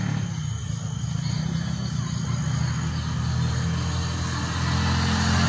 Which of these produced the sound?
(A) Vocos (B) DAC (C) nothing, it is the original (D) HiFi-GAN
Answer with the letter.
C